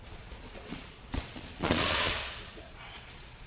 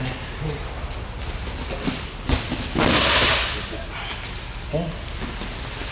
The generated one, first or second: first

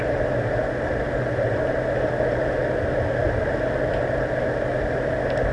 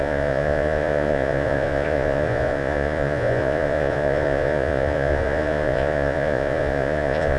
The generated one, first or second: second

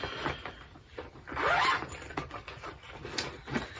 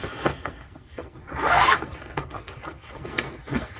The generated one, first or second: second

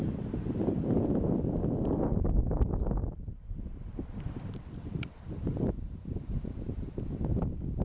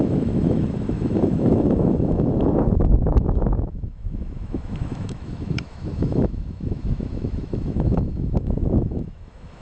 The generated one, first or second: second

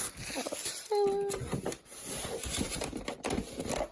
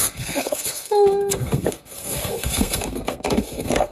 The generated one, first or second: second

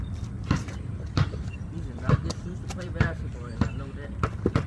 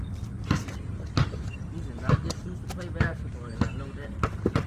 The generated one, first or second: first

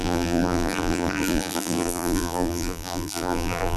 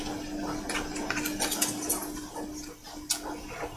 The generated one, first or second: first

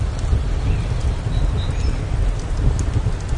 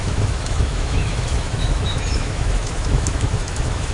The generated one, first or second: second